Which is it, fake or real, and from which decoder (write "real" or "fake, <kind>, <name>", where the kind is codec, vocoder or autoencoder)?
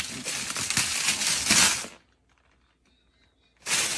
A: real